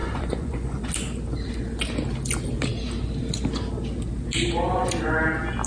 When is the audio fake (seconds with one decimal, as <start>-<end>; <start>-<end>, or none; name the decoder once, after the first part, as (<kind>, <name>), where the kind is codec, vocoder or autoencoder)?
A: 0.0-0.9 (vocoder, Vocos)